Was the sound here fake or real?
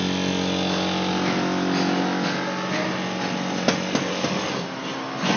real